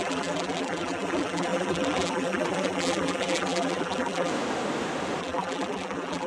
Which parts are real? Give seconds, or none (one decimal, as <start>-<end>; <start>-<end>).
4.3-5.2